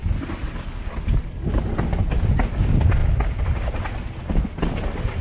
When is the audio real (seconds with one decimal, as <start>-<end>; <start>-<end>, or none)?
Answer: 0.0-5.2